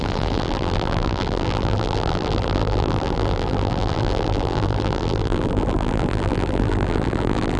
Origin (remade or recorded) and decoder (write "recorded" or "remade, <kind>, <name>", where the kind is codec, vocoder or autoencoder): remade, vocoder, BigVGAN v2